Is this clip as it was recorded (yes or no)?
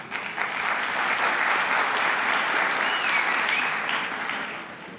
yes